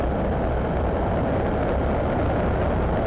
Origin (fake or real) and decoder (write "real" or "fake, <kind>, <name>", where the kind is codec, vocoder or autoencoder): real